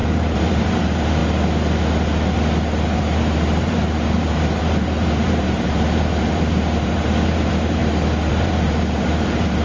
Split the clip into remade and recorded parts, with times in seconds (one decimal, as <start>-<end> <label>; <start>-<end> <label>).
0.0-1.2 remade; 1.2-3.0 recorded; 3.0-7.8 remade; 7.8-8.3 recorded; 8.3-9.6 remade